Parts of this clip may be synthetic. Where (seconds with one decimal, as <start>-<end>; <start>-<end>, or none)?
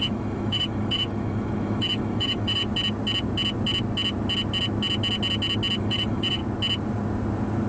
0.0-2.6; 5.8-6.4